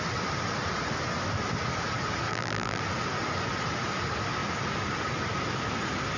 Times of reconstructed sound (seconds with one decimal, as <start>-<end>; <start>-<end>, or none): 2.3-2.8